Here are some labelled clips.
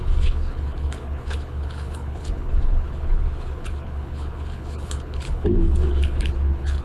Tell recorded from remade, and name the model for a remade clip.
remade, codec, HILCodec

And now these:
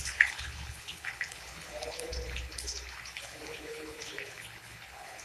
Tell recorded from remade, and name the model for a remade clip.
remade, codec, HILCodec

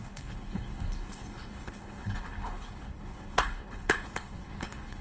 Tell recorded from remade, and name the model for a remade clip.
remade, codec, HILCodec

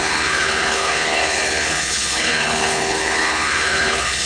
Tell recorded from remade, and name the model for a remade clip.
remade, codec, HILCodec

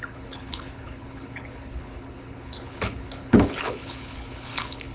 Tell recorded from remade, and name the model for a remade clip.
remade, codec, HILCodec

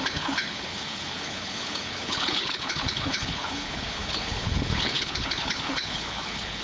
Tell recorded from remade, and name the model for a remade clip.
remade, codec, HILCodec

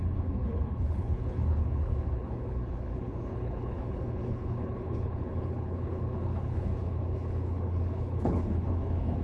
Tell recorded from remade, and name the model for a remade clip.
remade, codec, HILCodec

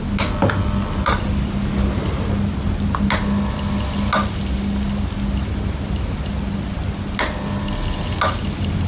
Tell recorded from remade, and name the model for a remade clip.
recorded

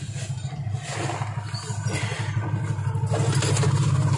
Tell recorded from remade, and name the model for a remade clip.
recorded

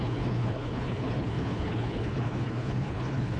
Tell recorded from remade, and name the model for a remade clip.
remade, codec, HILCodec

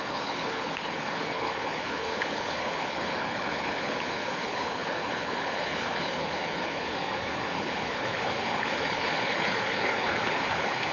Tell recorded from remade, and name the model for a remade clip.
remade, codec, HILCodec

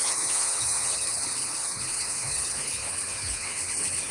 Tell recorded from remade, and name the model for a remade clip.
remade, codec, HILCodec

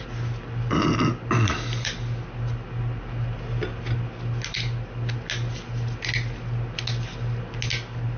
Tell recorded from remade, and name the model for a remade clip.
recorded